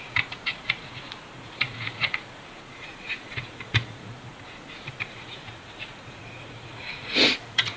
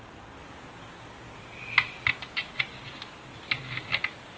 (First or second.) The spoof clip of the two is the first